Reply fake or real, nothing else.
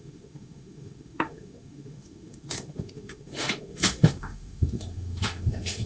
fake